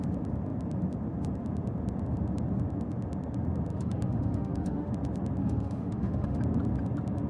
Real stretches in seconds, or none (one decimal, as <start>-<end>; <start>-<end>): 0.0-3.7; 4.9-5.4; 6.4-7.3